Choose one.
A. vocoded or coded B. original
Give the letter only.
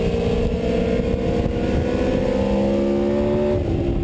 B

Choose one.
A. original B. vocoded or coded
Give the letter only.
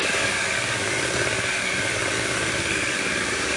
B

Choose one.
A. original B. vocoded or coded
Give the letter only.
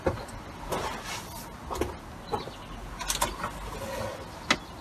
A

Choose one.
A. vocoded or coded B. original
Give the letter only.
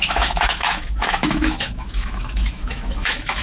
A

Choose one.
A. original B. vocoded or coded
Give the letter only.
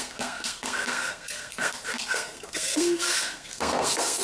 B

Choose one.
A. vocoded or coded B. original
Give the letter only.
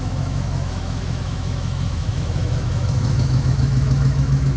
A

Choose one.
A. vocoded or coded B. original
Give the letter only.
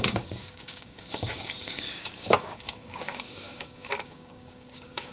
A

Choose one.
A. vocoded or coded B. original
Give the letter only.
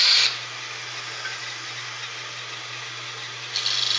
B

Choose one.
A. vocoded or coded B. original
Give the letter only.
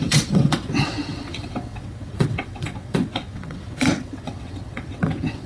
A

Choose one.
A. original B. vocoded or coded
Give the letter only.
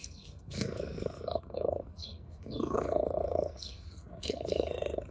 B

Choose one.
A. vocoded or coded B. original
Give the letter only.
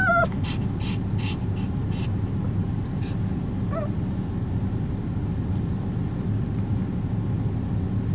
B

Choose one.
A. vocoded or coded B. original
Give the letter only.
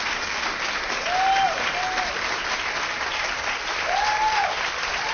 B